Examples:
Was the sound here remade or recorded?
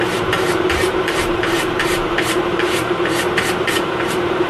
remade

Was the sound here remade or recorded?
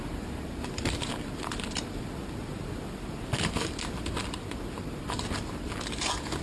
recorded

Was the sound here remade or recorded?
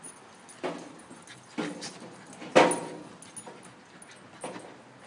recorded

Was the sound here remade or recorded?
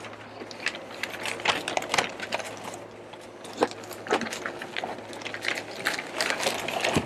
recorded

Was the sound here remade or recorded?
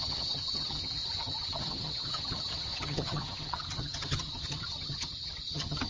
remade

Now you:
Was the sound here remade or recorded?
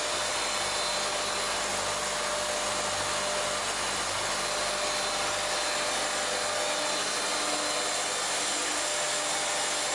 recorded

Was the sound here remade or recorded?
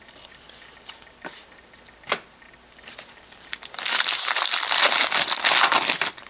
recorded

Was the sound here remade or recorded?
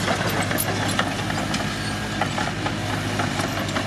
recorded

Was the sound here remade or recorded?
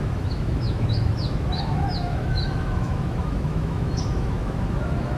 remade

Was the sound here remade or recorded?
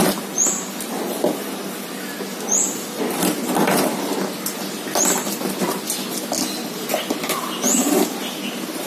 recorded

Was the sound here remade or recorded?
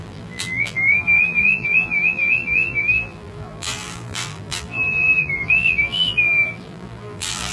remade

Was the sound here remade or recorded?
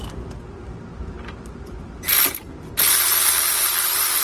recorded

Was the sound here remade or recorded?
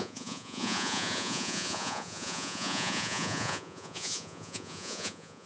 remade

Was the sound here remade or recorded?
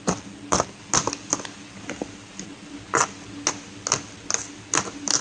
recorded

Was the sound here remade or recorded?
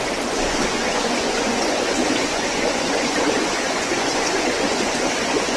remade